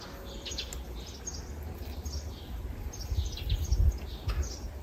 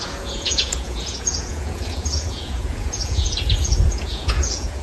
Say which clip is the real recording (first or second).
first